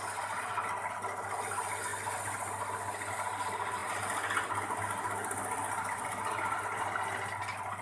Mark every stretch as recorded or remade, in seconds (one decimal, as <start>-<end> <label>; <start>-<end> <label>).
0.0-7.8 recorded

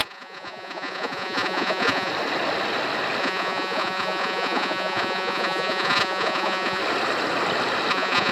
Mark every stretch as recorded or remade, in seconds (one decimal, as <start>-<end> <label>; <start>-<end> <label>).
0.0-2.1 remade; 2.1-3.2 recorded; 3.2-6.8 remade; 6.8-7.9 recorded; 7.9-8.3 remade

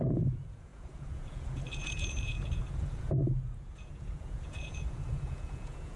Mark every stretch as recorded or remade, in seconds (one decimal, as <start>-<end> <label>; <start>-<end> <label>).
0.0-6.0 remade